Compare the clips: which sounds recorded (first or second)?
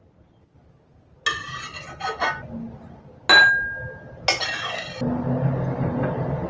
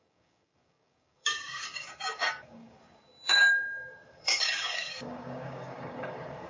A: first